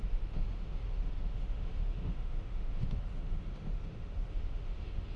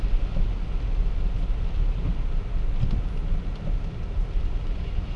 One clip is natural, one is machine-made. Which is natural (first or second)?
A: second